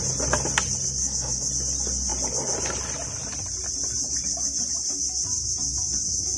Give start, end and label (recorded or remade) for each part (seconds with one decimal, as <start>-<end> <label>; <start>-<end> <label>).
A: 0.0-1.0 recorded; 1.0-1.5 remade; 1.5-6.4 recorded